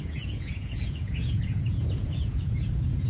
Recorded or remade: remade